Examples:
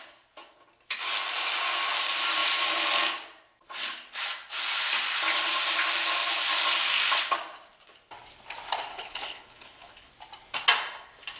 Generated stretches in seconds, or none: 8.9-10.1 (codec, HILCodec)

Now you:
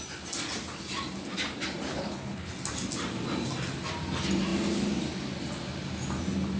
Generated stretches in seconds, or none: 1.9-2.5 (codec, HILCodec)

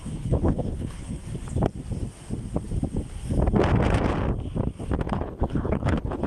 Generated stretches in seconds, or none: 0.0-1.2 (codec, HILCodec); 5.0-6.3

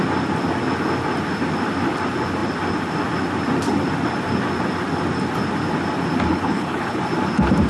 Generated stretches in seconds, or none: 6.3-7.0 (codec, HILCodec)